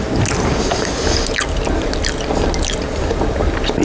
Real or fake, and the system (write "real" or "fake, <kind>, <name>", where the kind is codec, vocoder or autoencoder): real